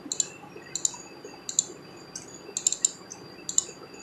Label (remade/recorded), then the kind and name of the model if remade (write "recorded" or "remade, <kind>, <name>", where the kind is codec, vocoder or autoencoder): recorded